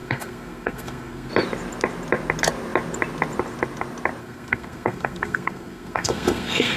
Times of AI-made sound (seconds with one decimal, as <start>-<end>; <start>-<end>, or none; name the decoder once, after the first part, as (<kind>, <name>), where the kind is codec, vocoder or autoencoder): 0.0-1.3 (codec, SNAC); 4.2-6.8